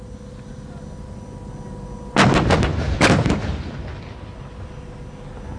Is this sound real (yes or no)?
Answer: yes